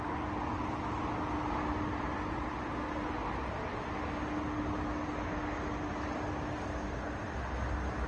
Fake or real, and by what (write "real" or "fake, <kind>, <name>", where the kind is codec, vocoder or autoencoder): real